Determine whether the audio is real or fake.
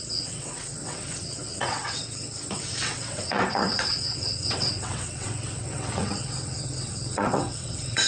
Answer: fake